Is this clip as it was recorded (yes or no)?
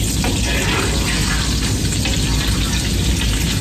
yes